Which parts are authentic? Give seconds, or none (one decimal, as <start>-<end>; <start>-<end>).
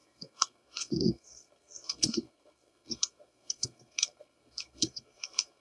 none